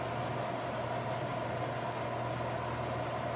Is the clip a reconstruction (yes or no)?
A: no